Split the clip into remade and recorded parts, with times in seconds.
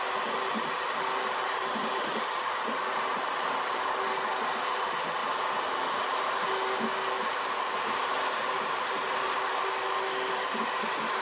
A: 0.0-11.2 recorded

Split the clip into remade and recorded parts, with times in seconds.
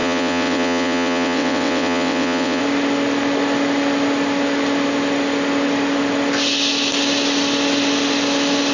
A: 0.0-2.6 remade; 2.6-8.7 recorded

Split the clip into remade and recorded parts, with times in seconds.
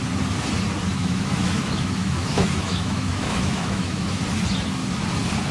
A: 0.0-0.9 recorded; 0.9-4.2 remade; 4.2-5.5 recorded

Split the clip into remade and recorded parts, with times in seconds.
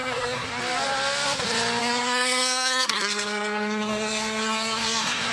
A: 0.0-0.6 remade; 0.6-1.8 recorded; 1.8-5.3 remade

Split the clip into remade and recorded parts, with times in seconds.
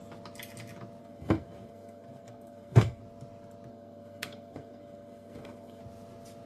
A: 0.0-1.0 recorded; 1.0-3.0 remade; 3.0-3.7 recorded; 3.7-5.8 remade; 5.8-6.5 recorded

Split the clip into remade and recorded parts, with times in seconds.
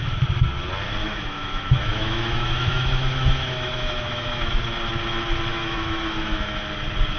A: 0.0-1.0 recorded; 1.0-4.6 remade; 4.6-5.5 recorded; 5.5-6.6 remade; 6.6-7.2 recorded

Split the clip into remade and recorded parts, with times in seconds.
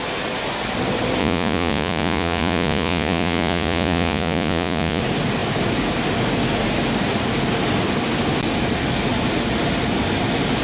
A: 0.0-1.2 recorded; 1.2-5.0 remade; 5.0-10.6 recorded